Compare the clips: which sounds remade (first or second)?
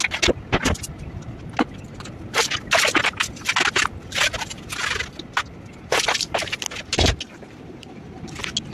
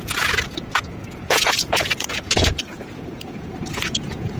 second